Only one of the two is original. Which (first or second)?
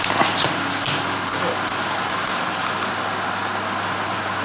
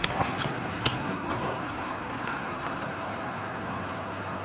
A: first